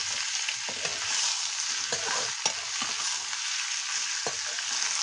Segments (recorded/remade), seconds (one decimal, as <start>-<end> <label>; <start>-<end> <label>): 0.0-5.0 recorded